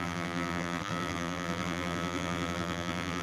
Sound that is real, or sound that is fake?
fake